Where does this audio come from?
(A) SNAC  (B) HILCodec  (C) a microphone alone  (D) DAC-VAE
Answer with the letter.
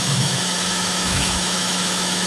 D